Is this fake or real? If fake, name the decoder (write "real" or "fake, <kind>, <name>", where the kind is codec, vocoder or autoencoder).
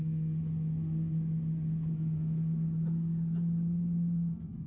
real